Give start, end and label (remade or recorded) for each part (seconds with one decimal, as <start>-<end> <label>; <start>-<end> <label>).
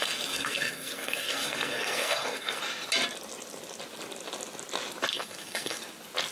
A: 0.0-2.6 remade; 2.6-5.1 recorded; 5.1-5.8 remade; 5.8-6.3 recorded